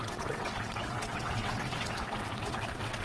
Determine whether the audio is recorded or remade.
remade